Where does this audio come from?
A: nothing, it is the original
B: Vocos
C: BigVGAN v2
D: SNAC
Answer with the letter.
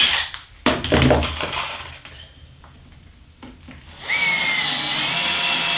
A